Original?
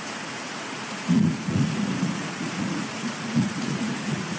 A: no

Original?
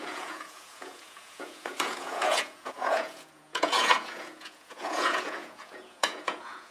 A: no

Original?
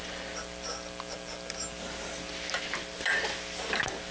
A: yes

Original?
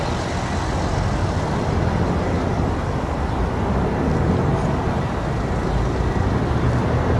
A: yes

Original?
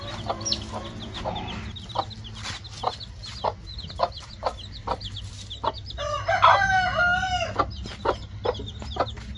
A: yes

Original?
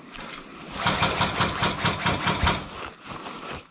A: yes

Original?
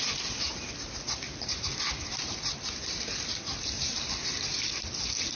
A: yes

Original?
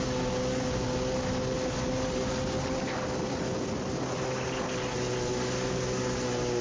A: yes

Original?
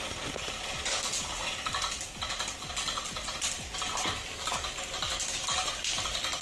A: yes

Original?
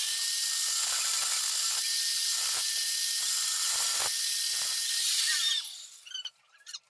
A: yes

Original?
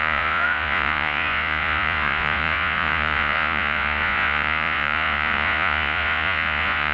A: no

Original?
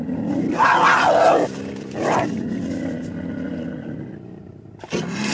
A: yes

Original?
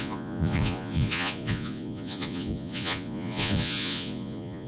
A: no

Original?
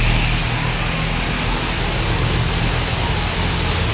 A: yes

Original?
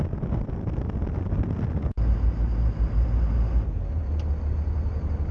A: yes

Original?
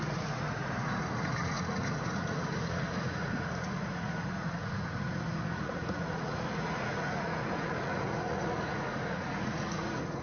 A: no